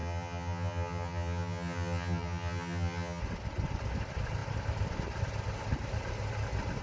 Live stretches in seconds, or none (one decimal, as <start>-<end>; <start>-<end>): 3.2-6.8